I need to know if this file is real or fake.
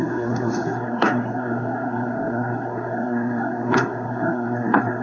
fake